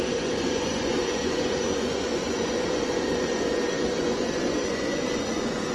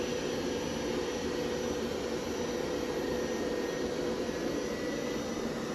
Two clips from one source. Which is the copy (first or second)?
first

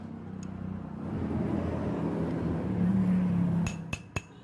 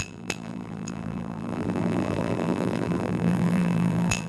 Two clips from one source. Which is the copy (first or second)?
second